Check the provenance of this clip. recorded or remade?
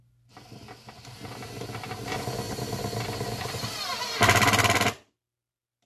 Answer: recorded